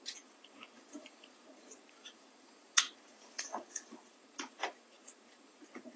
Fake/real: fake